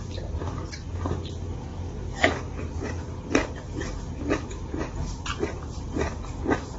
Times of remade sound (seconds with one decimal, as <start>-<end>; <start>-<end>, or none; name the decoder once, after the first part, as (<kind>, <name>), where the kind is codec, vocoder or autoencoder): none